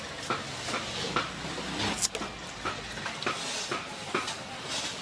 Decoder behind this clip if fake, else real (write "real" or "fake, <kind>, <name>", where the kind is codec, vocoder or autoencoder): real